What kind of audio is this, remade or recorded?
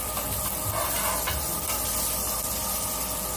recorded